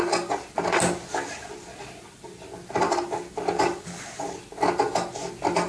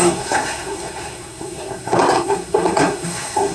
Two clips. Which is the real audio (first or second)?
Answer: first